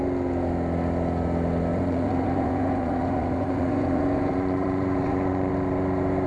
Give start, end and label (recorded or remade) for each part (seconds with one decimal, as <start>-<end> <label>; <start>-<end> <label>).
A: 0.0-1.7 recorded; 1.7-5.5 remade; 5.5-6.3 recorded

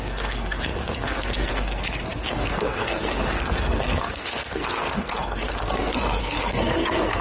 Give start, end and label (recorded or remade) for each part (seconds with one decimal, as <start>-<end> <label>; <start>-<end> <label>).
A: 0.0-7.2 remade

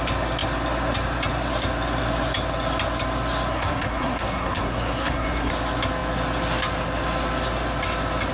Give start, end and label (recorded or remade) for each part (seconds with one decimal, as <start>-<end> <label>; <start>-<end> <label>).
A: 0.0-3.5 recorded; 3.5-5.5 remade; 5.5-8.3 recorded

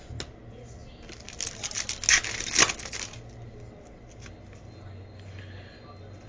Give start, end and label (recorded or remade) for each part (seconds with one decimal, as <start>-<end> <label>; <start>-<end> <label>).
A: 0.0-6.3 recorded

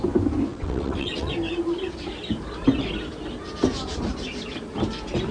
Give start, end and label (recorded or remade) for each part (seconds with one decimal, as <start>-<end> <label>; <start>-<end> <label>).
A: 0.0-0.5 recorded; 0.5-1.3 remade; 1.3-5.3 recorded

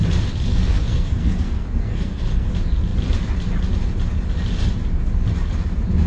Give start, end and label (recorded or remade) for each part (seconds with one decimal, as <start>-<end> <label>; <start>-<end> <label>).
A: 0.0-0.5 recorded; 0.5-2.5 remade; 2.5-6.1 recorded